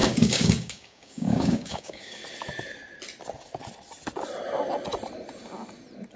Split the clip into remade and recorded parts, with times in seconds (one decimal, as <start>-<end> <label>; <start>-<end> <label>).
0.0-2.2 remade; 2.2-6.2 recorded